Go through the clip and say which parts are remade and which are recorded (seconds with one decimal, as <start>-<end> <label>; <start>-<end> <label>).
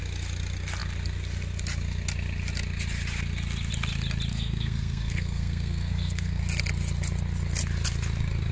0.0-4.3 recorded; 4.3-6.4 remade; 6.4-8.5 recorded